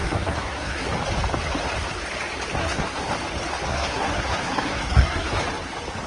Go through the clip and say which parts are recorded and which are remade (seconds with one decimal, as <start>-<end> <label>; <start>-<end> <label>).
0.0-0.9 remade; 0.9-2.6 recorded; 2.6-3.1 remade; 3.1-3.7 recorded; 3.7-5.4 remade; 5.4-6.1 recorded